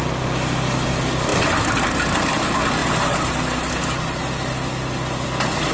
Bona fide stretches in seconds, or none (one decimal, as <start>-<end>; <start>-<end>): 0.0-5.7